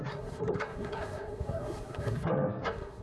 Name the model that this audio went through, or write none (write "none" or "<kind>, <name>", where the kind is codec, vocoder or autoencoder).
codec, SNAC